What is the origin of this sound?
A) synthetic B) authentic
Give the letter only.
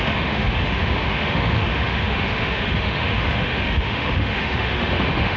A